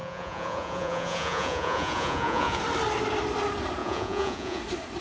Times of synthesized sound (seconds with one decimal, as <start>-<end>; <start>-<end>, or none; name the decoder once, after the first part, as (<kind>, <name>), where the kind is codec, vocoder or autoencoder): 0.0-2.6 (vocoder, Vocos); 3.8-4.6